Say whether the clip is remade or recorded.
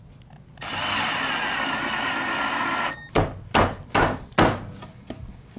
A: recorded